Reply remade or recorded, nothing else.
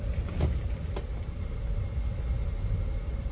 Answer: recorded